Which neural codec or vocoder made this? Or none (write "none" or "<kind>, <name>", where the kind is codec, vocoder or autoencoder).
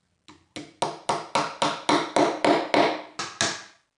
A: none